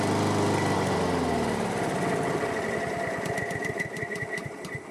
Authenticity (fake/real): real